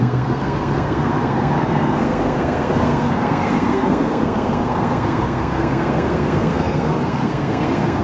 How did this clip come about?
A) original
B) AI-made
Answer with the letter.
B